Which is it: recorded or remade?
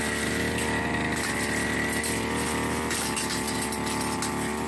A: recorded